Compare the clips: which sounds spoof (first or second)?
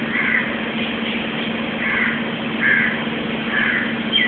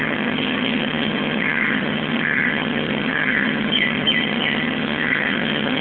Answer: second